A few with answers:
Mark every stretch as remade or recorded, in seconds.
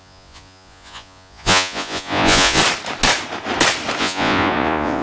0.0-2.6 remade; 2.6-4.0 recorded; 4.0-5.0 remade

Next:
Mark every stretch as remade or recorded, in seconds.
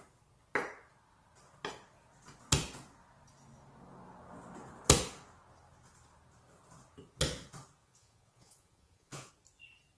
0.0-7.8 recorded; 7.8-9.3 remade; 9.3-10.0 recorded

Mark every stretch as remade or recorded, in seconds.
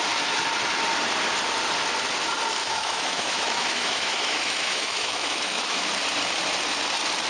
0.0-2.6 recorded; 2.6-5.9 remade; 5.9-7.3 recorded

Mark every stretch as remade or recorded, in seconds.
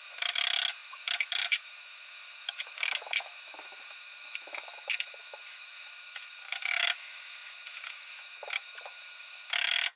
0.0-10.0 remade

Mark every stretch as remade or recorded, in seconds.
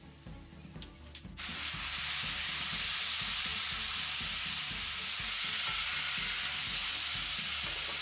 0.0-8.0 recorded